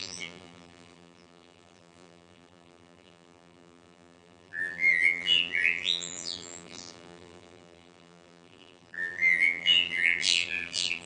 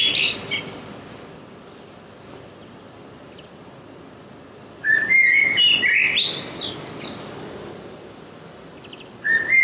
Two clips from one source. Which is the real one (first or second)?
second